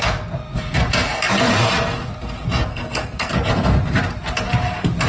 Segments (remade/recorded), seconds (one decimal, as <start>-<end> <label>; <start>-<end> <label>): 0.0-2.7 recorded; 2.7-3.3 remade; 3.3-5.1 recorded